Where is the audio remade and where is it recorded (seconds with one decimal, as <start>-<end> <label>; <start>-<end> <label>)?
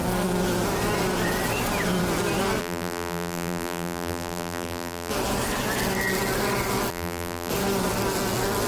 0.0-2.6 recorded; 2.6-5.1 remade; 5.1-6.9 recorded; 6.9-7.5 remade; 7.5-8.7 recorded